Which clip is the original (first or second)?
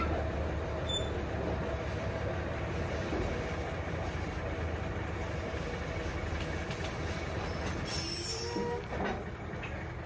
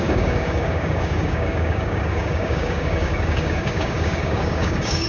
first